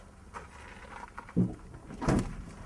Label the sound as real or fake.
real